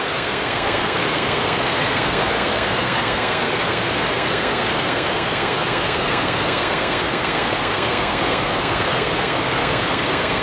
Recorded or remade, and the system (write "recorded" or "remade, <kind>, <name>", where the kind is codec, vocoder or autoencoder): remade, codec, SNAC